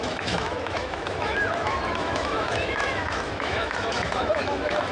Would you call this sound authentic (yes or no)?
no